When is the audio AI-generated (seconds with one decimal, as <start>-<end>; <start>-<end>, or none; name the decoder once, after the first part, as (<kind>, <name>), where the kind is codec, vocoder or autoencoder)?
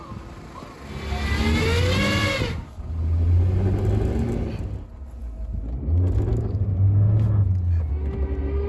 none